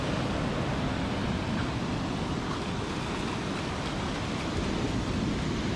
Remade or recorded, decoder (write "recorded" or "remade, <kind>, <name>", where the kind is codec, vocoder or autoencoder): recorded